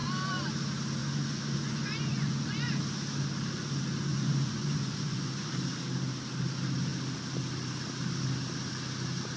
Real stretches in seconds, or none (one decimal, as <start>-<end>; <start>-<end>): 0.0-1.0; 2.8-4.1; 5.5-9.4